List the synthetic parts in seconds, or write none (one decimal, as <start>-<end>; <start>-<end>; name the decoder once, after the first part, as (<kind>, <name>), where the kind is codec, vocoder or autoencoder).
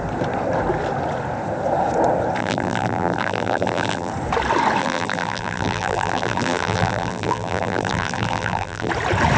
2.4-4.1 (vocoder, BigVGAN v2); 4.8-8.9